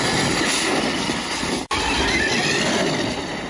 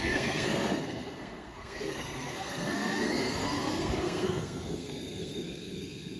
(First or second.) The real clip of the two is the first